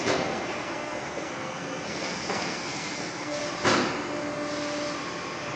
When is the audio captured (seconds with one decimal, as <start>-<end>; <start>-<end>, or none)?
3.4-5.6